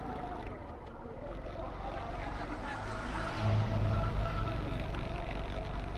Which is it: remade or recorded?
recorded